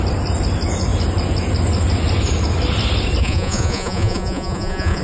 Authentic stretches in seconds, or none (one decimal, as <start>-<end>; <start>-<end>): 0.0-3.2